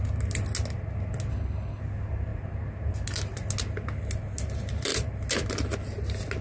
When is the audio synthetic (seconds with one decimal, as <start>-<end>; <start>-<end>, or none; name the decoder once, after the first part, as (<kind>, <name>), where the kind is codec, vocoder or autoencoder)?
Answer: 1.3-1.8 (codec, HILCodec)